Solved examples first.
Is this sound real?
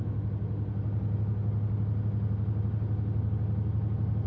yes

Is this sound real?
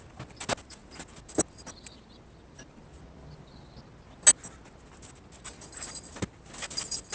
yes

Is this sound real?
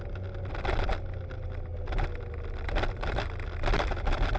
yes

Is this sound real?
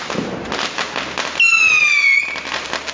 yes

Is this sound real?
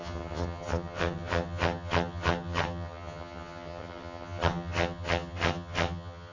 no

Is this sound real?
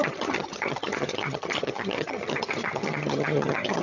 no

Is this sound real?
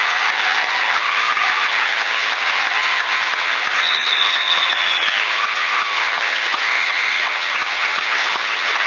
no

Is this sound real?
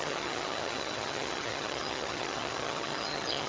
no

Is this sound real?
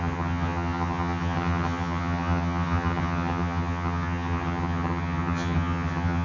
no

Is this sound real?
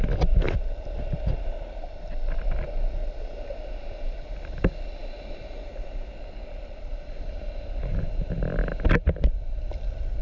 yes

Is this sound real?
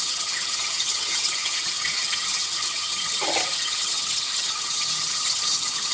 no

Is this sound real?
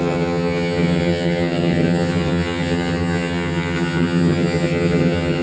no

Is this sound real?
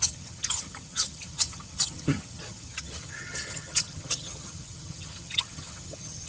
no